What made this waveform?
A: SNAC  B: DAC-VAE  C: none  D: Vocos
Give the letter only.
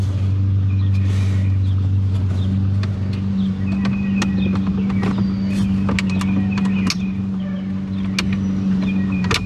C